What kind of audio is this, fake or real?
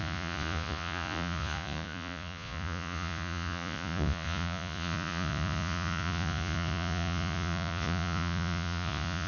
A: fake